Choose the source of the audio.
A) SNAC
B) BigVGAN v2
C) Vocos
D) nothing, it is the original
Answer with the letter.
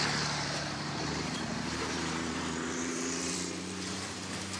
B